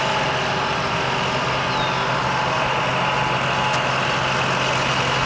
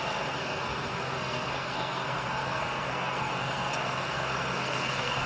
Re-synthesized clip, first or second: second